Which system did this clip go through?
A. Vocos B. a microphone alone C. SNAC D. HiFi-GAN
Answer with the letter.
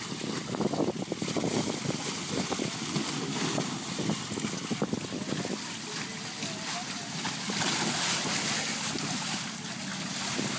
B